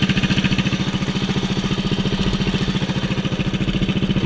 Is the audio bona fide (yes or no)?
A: yes